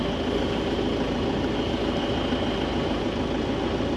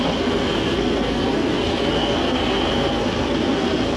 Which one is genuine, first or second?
first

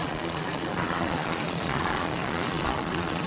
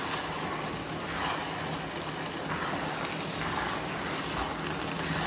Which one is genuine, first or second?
second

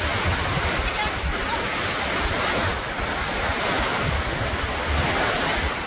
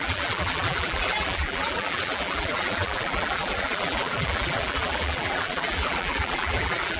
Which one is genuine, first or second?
first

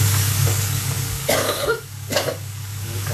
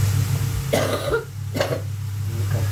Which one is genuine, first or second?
second